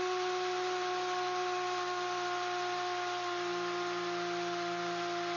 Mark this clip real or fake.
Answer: real